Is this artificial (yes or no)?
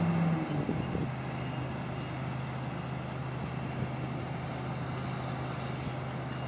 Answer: no